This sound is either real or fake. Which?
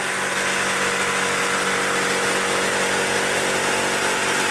real